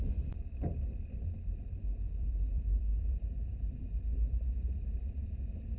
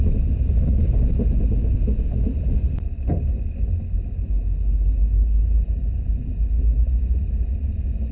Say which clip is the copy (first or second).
first